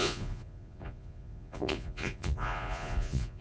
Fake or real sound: fake